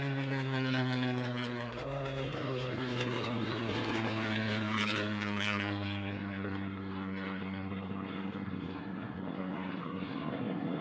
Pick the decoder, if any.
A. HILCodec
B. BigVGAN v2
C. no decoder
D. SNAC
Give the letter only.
D